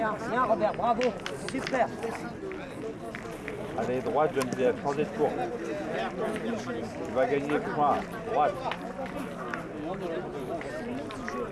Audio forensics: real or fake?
real